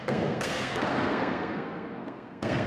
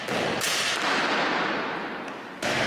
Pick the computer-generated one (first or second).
first